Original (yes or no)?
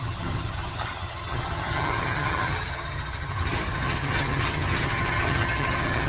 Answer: no